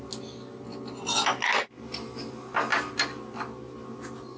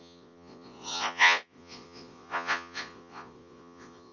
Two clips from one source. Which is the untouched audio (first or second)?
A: first